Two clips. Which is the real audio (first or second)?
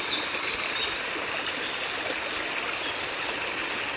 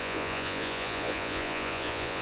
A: first